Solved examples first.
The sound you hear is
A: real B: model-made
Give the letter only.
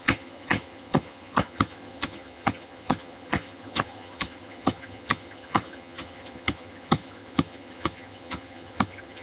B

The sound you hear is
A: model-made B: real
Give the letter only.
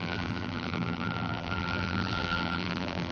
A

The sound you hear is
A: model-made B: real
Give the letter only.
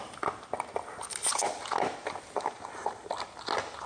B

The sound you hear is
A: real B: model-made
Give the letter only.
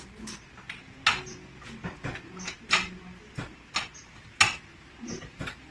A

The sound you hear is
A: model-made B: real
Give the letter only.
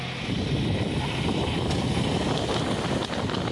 B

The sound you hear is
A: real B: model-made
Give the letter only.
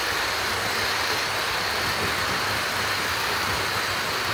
A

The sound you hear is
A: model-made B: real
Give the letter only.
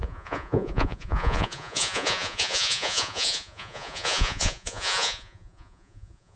A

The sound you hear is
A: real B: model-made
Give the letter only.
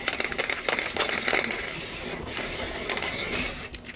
A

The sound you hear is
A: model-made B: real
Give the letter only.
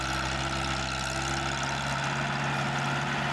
B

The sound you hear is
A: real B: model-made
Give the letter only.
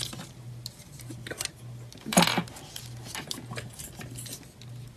A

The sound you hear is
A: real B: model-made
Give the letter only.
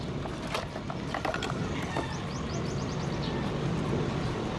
A